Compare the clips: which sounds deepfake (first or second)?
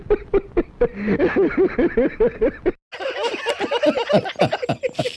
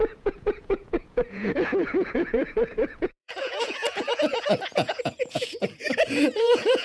second